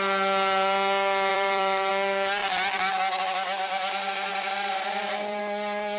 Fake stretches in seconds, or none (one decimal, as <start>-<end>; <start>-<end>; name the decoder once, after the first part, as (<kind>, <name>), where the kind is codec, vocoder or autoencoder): 1.3-1.9 (vocoder, BigVGAN v2); 2.4-2.9; 4.3-5.4